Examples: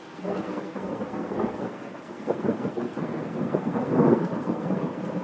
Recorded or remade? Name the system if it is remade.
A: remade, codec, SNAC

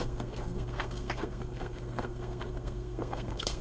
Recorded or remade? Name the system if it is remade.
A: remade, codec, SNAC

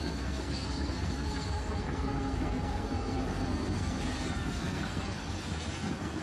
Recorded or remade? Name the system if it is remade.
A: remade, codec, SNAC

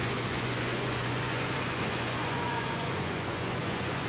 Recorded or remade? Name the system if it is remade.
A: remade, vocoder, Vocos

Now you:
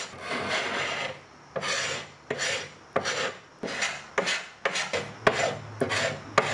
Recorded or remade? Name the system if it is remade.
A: recorded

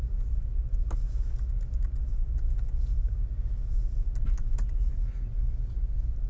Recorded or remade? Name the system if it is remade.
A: recorded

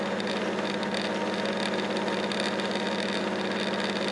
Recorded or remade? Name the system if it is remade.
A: recorded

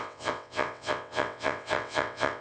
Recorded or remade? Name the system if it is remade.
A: remade, vocoder, WaveNeXt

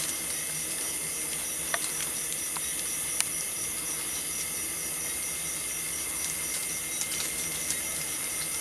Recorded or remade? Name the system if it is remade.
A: recorded